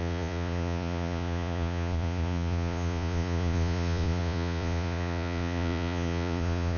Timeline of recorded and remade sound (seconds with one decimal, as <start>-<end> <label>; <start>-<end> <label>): 0.0-6.8 remade